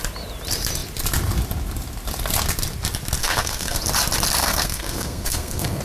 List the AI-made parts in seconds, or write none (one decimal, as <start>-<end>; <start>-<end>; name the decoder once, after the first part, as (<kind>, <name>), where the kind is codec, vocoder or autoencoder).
3.2-3.8 (codec, SNAC); 4.4-5.8

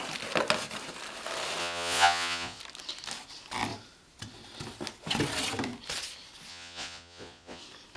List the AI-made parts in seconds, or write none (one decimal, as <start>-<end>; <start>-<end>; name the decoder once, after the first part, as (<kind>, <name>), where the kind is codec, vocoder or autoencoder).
1.6-2.6 (vocoder, Vocos); 6.5-7.6

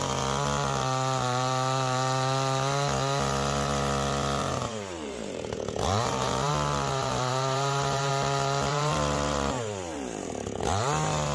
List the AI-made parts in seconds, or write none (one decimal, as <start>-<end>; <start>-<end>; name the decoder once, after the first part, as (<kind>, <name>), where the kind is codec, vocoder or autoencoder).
4.4-6.5 (vocoder, BigVGAN v2); 6.9-8.1; 8.7-10.6

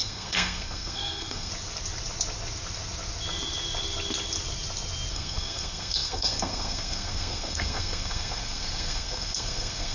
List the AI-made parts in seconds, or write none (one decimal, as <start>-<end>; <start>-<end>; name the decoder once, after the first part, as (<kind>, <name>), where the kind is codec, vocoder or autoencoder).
0.0-1.5 (codec, SNAC); 5.1-9.9

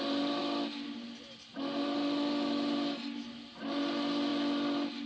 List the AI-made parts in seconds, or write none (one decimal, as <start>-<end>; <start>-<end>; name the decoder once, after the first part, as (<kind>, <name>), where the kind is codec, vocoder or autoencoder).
none

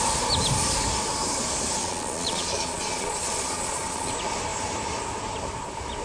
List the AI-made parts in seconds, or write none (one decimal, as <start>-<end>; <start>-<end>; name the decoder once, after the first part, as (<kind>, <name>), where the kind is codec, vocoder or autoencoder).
1.8-4.1 (vocoder, Vocos)

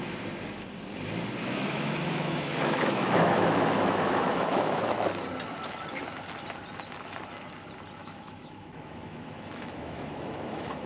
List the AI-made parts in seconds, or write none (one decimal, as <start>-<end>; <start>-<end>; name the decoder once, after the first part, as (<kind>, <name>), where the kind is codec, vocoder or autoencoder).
1.4-5.1 (autoencoder, DAC-VAE); 8.0-10.9